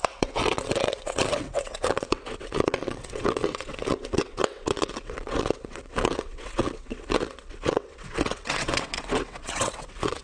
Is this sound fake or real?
fake